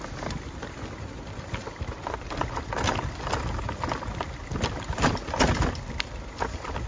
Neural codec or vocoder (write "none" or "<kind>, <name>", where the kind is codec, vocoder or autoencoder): none